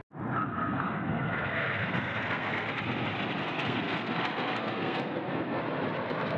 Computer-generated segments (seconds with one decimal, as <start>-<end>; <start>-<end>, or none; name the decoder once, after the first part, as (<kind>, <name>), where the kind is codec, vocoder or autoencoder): 0.5-2.8 (codec, SNAC); 3.4-5.6